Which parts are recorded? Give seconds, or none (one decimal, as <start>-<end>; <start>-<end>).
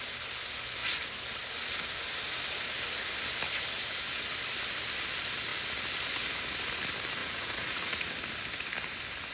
0.0-7.2; 8.1-9.3